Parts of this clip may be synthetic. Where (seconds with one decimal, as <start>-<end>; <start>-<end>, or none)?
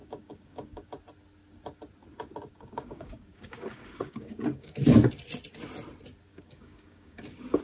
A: 0.0-0.9; 2.5-4.7; 6.3-7.6